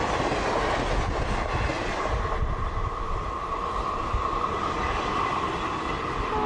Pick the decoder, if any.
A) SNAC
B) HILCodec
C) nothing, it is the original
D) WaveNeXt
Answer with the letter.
C